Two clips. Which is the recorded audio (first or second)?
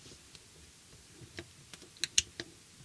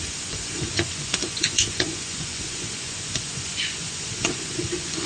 first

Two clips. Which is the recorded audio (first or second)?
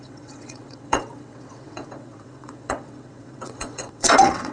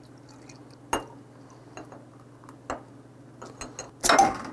second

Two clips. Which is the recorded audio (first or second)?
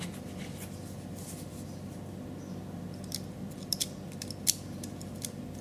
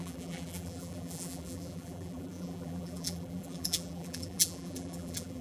first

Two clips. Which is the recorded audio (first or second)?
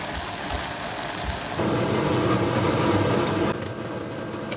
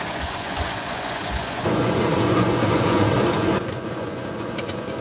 first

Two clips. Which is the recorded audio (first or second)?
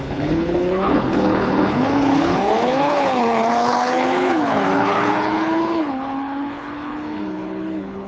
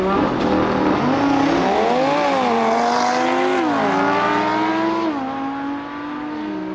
second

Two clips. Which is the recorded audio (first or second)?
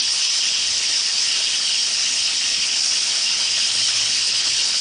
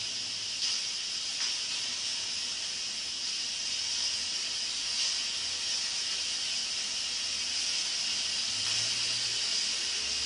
second